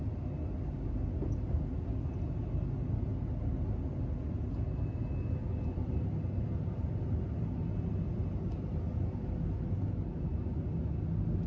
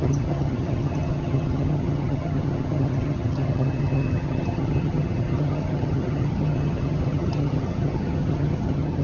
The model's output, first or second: second